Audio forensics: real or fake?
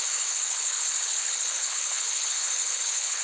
fake